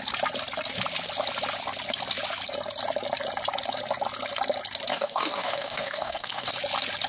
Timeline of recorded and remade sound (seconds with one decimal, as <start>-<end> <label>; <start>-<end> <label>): 0.0-4.9 recorded; 4.9-6.5 remade; 6.5-7.1 recorded

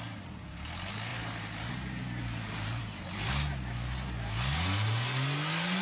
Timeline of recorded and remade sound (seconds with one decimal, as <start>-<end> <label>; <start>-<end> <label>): 0.0-1.1 recorded; 1.1-3.3 remade; 3.3-5.8 recorded

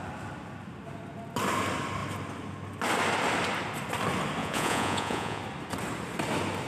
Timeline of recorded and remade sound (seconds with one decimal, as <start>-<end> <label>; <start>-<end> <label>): 0.0-4.4 recorded; 4.4-5.4 remade; 5.4-6.7 recorded

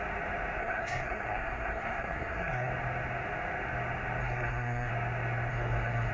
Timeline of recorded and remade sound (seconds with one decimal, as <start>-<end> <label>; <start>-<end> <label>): 0.0-0.6 recorded; 0.6-2.7 remade; 2.7-4.2 recorded; 4.2-4.9 remade; 4.9-5.5 recorded; 5.5-6.1 remade